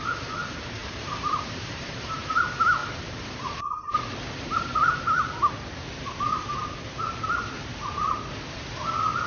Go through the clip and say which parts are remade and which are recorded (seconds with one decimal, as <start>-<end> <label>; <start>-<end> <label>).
0.0-0.8 recorded; 0.8-2.4 remade; 2.4-2.8 recorded; 2.8-5.5 remade; 5.5-9.3 recorded